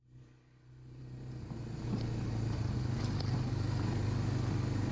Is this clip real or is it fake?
real